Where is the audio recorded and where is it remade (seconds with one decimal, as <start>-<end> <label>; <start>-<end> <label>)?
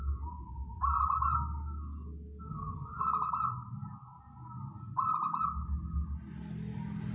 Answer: 0.0-2.5 recorded; 2.5-3.0 remade; 3.0-7.1 recorded